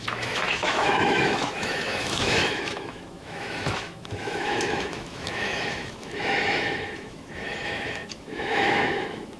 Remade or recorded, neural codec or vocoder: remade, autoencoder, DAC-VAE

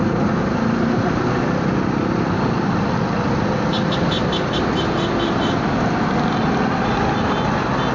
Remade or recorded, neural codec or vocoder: recorded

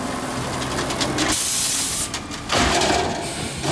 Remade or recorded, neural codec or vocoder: recorded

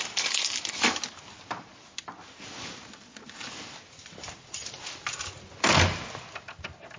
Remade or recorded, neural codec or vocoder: recorded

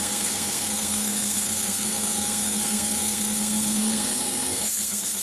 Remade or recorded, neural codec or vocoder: remade, codec, SNAC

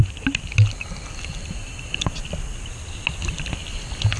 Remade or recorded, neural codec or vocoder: recorded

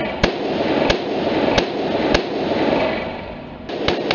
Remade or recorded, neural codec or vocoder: recorded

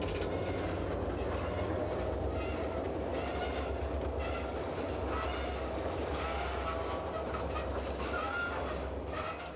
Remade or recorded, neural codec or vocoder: recorded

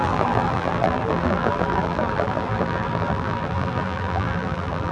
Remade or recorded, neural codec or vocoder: remade, vocoder, BigVGAN v2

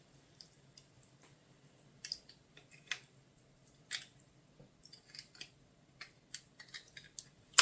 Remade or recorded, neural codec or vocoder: recorded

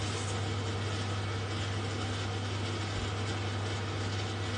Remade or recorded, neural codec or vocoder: recorded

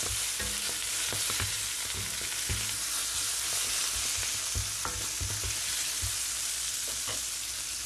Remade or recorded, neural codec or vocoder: recorded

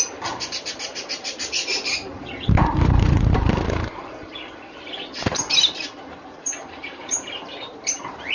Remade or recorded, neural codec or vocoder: remade, vocoder, BigVGAN v2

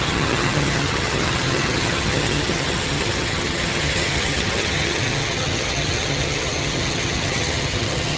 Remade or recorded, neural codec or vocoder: remade, vocoder, HiFi-GAN